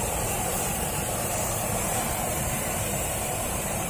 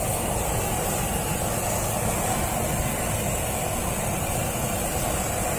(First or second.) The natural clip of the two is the second